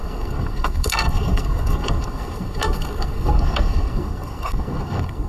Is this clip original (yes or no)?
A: no